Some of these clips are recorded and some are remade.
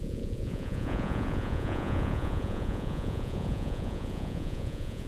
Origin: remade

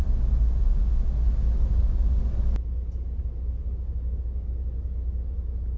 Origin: recorded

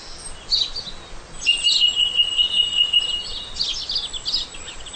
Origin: recorded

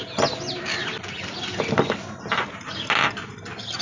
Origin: recorded